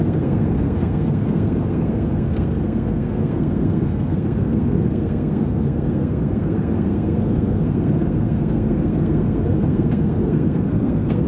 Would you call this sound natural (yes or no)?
no